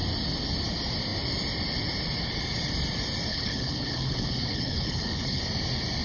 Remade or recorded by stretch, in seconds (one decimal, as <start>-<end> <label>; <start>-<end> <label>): 0.0-3.3 recorded; 3.3-5.4 remade; 5.4-6.0 recorded